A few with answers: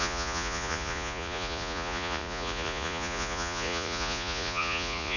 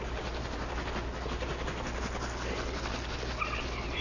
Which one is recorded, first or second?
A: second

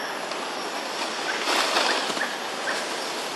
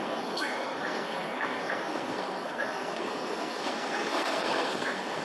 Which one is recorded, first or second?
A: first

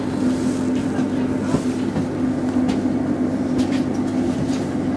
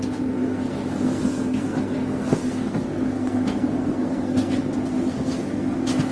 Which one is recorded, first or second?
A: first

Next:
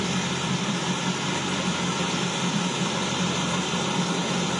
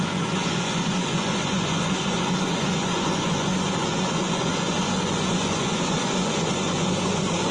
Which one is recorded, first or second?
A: first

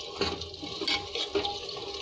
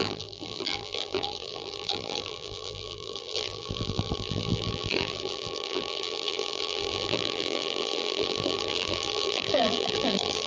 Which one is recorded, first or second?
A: first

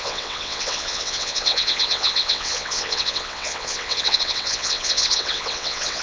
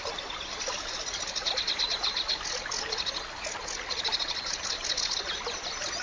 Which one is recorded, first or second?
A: second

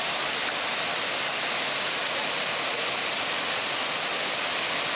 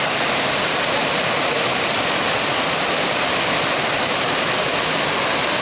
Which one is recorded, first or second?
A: first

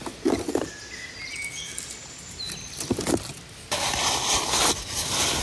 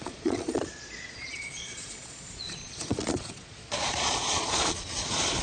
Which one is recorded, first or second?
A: first